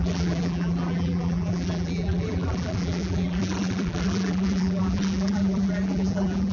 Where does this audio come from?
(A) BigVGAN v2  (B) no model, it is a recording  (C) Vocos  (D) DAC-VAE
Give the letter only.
A